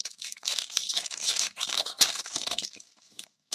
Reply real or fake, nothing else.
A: fake